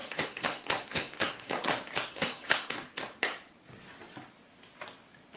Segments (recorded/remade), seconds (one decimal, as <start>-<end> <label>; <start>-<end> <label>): 0.0-1.7 remade; 1.7-2.1 recorded; 2.1-3.0 remade; 3.0-5.4 recorded